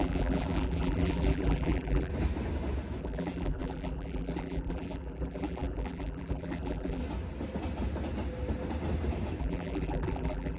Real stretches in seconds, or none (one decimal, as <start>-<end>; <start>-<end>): 2.1-3.0; 7.0-9.4